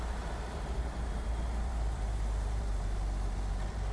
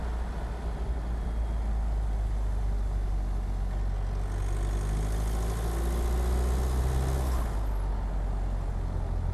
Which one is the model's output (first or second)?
first